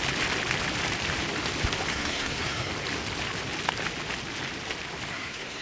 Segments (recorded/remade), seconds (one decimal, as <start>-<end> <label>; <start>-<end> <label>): 0.0-1.9 recorded; 1.9-2.7 remade; 2.7-5.1 recorded; 5.1-5.6 remade